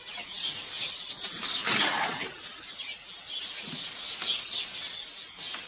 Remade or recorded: recorded